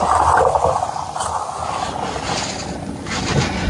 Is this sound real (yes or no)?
yes